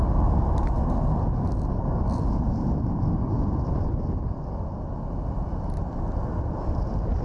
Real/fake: real